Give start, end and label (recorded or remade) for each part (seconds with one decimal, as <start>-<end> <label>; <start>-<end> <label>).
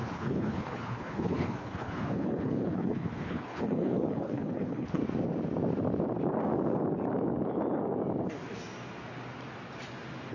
0.0-5.0 remade; 5.0-10.3 recorded